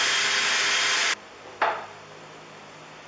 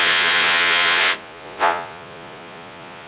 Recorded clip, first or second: first